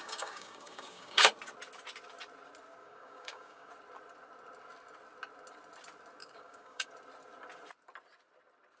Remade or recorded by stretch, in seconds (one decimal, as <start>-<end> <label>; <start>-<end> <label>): 0.0-1.3 remade; 1.3-2.8 recorded; 2.8-3.7 remade; 3.7-6.2 recorded; 6.2-6.9 remade; 6.9-8.8 recorded